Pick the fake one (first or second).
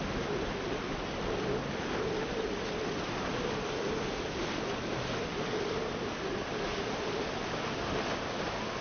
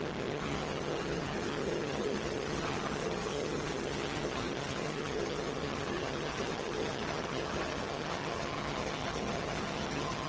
second